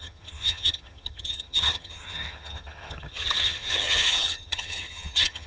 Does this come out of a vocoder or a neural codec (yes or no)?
yes